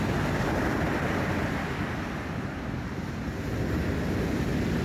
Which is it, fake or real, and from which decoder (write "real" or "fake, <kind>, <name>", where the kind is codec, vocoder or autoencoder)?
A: real